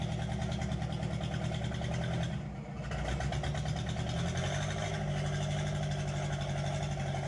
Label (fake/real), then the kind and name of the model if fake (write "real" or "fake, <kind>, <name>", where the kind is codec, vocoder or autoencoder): real